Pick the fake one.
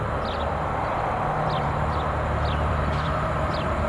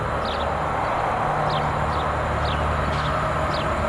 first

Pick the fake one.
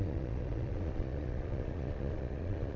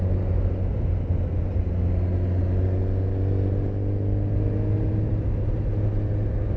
first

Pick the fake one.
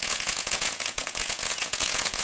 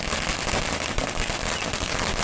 first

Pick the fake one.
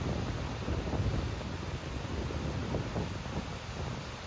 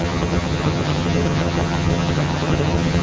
second